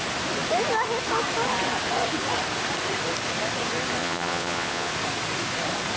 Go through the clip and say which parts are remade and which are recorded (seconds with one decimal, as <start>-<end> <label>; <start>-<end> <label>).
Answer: 0.0-4.0 recorded; 4.0-4.9 remade; 4.9-6.0 recorded